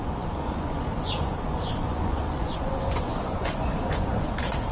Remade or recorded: remade